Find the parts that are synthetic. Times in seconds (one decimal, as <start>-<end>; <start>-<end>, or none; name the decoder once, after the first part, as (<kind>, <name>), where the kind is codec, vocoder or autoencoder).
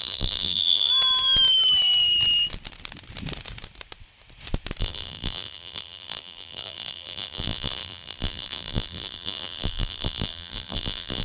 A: 0.0-0.9 (vocoder, BigVGAN v2); 4.8-11.2